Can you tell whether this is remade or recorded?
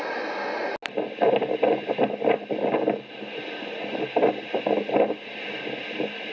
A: recorded